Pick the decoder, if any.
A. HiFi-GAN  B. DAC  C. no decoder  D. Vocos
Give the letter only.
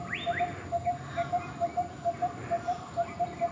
C